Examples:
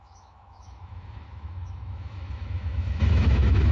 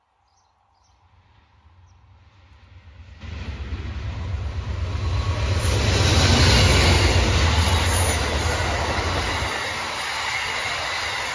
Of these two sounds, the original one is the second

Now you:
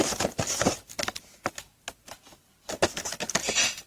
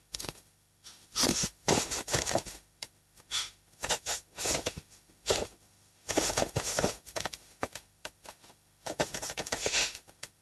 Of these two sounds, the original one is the first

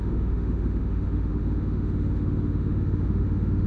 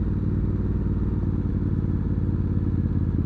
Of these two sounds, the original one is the second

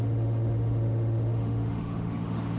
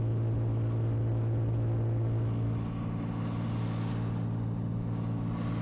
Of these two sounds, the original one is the second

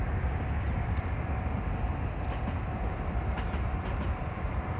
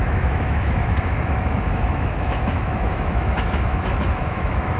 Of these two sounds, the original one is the first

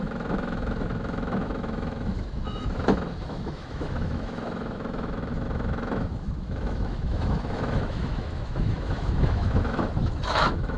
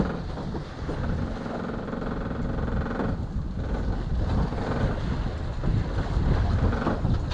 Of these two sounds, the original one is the second